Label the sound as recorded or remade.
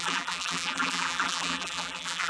remade